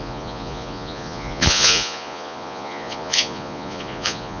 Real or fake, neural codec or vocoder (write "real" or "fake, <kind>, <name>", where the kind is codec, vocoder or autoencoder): fake, vocoder, Vocos